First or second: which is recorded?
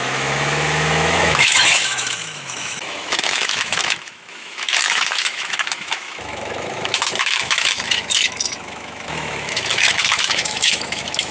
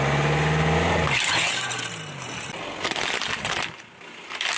second